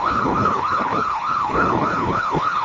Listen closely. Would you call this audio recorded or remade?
remade